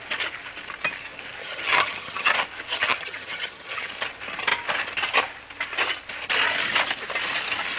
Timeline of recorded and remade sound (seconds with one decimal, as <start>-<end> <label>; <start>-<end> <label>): 0.0-1.4 recorded; 1.4-2.3 remade; 2.3-2.7 recorded; 2.7-3.9 remade; 3.9-7.8 recorded